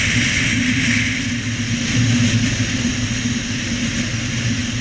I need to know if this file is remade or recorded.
recorded